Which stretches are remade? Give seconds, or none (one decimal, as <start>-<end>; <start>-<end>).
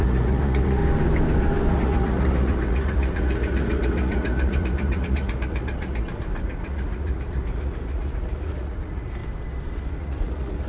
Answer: 0.0-0.8; 1.7-9.2; 9.9-10.7